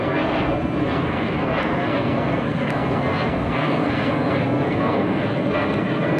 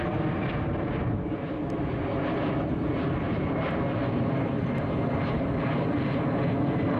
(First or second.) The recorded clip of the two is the second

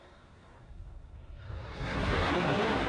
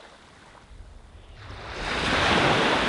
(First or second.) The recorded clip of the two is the second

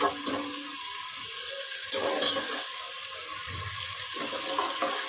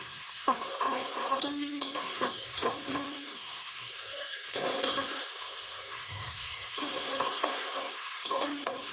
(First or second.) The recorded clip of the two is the first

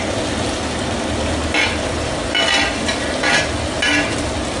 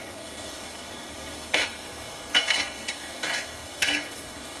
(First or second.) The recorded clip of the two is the first